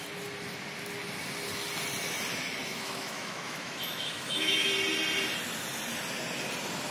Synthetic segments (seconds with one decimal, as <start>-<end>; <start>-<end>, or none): 2.7-4.7